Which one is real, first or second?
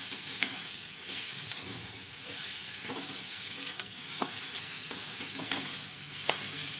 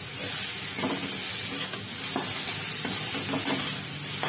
second